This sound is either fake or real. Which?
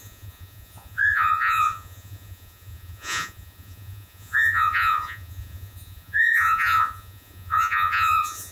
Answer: fake